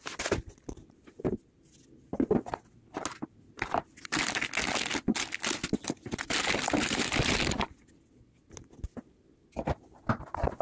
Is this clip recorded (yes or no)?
yes